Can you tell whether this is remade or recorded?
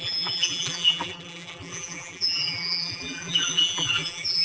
remade